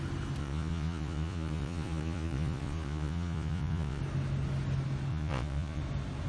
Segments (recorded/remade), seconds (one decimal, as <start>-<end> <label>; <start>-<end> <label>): 0.0-0.4 recorded; 0.4-4.0 remade; 4.0-5.1 recorded; 5.1-5.8 remade; 5.8-6.3 recorded